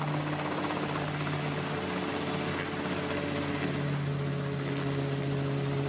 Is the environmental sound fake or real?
real